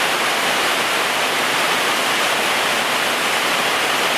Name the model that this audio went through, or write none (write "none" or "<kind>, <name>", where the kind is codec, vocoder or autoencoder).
none